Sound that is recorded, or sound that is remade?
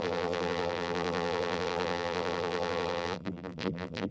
remade